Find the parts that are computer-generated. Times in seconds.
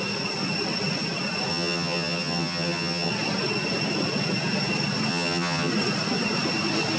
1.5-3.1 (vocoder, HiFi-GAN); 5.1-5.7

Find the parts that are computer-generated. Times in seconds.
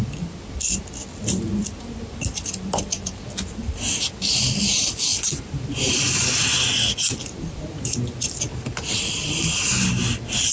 none